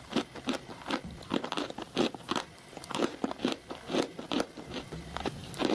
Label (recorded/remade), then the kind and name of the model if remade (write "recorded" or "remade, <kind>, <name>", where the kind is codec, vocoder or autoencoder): remade, vocoder, BigVGAN v2